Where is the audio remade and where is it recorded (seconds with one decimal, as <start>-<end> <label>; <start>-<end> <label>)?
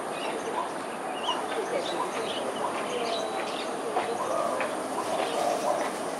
0.0-0.6 recorded; 0.6-1.2 remade; 1.2-6.2 recorded